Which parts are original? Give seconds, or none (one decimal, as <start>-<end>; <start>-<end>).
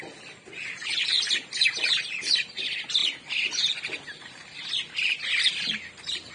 0.0-1.6; 2.6-6.3